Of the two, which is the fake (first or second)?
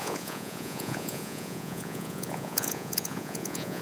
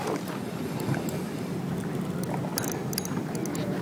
first